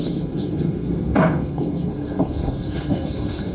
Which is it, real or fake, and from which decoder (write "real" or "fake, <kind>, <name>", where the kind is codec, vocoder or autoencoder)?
fake, codec, SNAC